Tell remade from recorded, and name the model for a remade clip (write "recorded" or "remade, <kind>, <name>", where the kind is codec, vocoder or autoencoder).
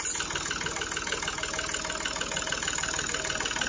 recorded